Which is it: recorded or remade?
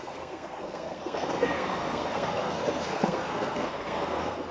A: remade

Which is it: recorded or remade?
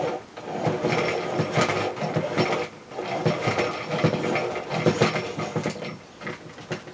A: recorded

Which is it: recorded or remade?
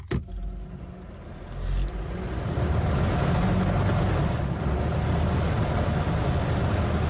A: recorded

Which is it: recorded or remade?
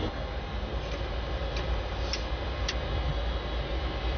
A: recorded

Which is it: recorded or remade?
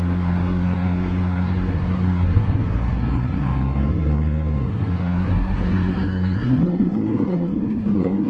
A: remade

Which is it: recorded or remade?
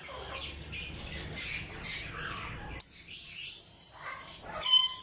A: recorded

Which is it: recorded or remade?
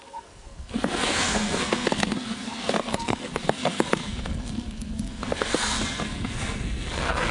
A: remade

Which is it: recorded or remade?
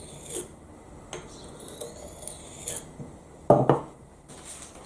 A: recorded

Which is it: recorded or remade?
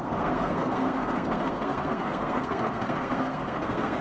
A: remade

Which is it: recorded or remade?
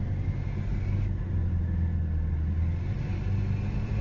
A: recorded